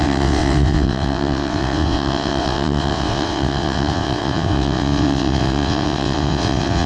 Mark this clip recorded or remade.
remade